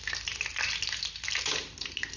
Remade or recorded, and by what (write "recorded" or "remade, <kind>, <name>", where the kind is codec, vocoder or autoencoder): recorded